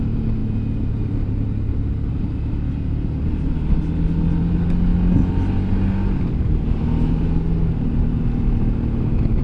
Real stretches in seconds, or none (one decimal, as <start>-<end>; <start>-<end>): 0.0-9.4